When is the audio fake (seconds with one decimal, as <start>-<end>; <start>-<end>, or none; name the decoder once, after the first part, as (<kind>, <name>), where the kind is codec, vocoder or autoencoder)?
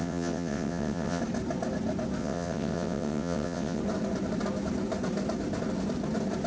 0.0-1.2 (vocoder, WaveNeXt); 2.2-3.8